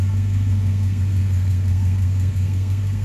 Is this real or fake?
fake